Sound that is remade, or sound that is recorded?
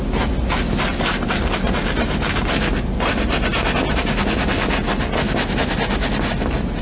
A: recorded